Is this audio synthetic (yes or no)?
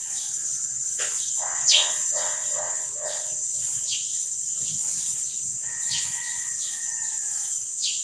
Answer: yes